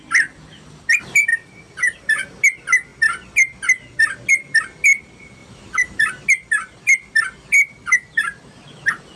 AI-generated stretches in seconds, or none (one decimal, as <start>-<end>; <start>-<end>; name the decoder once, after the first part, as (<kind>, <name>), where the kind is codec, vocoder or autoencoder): 1.3-2.3 (vocoder, BigVGAN v2); 5.4-6.0